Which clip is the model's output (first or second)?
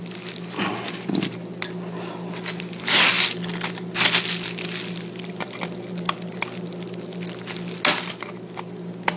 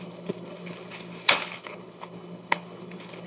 second